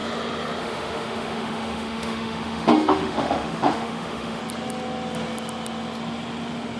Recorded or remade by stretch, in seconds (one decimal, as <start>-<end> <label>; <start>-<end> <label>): 0.0-0.6 recorded; 0.6-4.4 remade; 4.4-6.8 recorded